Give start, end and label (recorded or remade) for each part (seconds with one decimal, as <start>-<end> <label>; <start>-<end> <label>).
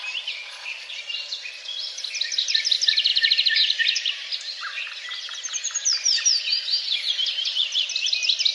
0.0-8.5 recorded